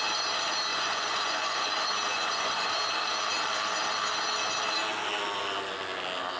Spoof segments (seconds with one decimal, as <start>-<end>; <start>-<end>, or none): 0.7-1.7; 2.1-2.7

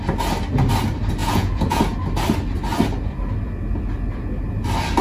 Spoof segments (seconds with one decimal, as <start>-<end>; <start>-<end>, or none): 1.2-1.8

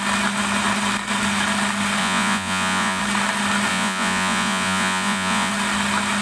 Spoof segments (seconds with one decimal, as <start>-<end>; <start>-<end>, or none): 2.0-3.0; 3.7-5.5

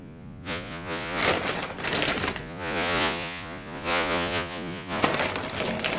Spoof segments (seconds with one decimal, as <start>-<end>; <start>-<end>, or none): 0.0-1.2; 2.4-5.0

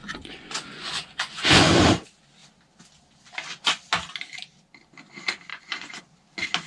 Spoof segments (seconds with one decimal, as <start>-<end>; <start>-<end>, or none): 0.0-1.7; 5.5-6.0

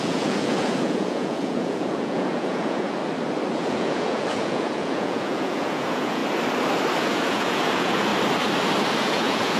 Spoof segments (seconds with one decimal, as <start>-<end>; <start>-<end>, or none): 0.0-3.0; 3.6-6.2; 7.0-8.1; 9.0-9.6

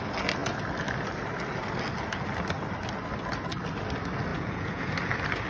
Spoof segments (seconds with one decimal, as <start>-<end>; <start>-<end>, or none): 4.3-4.9

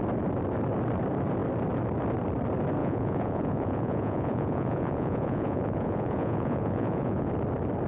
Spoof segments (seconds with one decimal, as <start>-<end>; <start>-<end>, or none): 2.8-7.3